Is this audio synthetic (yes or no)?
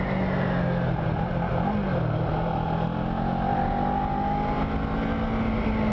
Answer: no